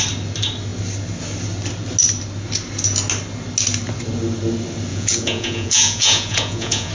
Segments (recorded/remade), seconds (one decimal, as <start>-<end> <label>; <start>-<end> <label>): 0.0-4.9 recorded; 4.9-6.9 remade